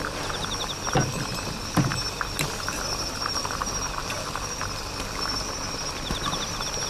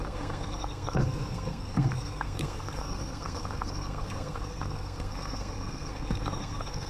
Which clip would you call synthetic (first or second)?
second